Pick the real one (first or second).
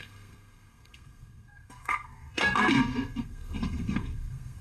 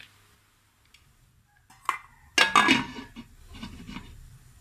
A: second